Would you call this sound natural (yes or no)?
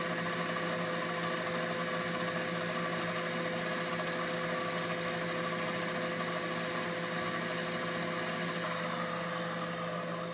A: yes